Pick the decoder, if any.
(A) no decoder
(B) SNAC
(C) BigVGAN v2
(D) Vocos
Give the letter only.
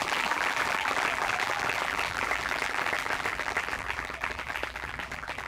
C